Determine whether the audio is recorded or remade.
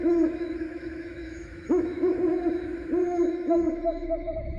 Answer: remade